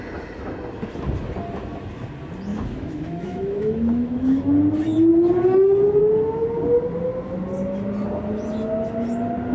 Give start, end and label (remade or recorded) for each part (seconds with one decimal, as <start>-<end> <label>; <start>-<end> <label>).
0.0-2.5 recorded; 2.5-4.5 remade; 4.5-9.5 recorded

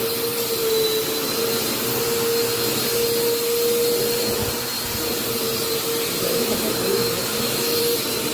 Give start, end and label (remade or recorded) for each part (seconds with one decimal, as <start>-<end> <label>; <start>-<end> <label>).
0.0-6.3 recorded; 6.3-7.8 remade; 7.8-8.3 recorded

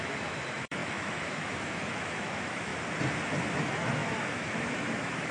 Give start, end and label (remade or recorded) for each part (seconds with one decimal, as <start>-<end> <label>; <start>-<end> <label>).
0.0-2.7 remade; 2.7-3.6 recorded; 3.6-5.3 remade

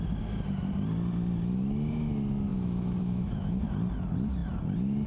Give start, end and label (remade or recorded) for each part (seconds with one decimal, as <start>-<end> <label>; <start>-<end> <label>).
0.0-2.5 recorded; 2.5-3.6 remade; 3.6-5.1 recorded

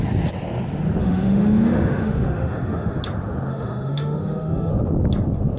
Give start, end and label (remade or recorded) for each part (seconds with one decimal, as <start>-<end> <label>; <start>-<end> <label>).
0.0-1.0 recorded; 1.0-3.0 remade; 3.0-3.5 recorded; 3.5-4.7 remade; 4.7-5.6 recorded

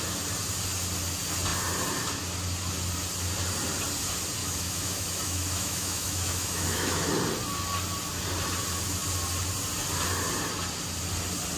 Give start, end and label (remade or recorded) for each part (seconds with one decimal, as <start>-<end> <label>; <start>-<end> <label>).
0.0-4.4 recorded; 4.4-7.1 remade; 7.1-11.6 recorded

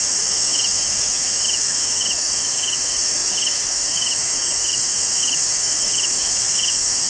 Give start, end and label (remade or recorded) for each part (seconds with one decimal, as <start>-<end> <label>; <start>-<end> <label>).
0.0-7.1 remade